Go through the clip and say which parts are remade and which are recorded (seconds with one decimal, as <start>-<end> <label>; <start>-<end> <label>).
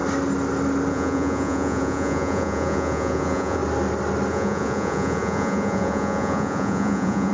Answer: 0.0-0.9 recorded; 0.9-3.6 remade; 3.6-4.3 recorded; 4.3-7.3 remade